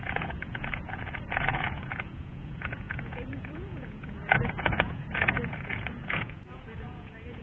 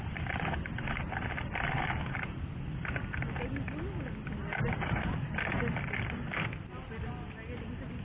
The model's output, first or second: first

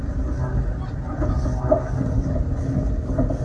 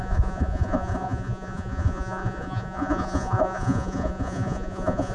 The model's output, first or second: second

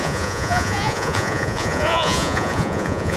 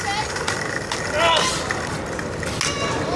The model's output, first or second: first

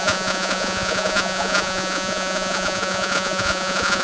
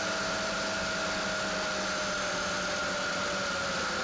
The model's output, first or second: first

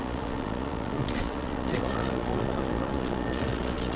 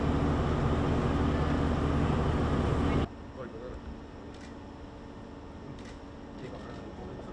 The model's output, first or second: first